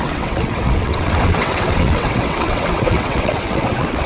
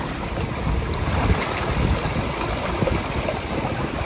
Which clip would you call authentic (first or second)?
second